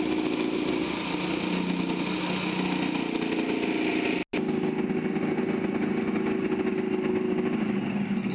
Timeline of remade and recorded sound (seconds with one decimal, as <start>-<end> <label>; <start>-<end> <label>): 0.0-8.3 recorded